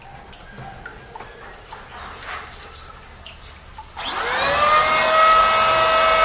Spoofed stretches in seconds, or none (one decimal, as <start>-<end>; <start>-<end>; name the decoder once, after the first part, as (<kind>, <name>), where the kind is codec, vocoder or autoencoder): none